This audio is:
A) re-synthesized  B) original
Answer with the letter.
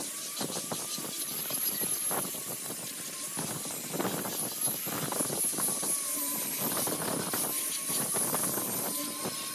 B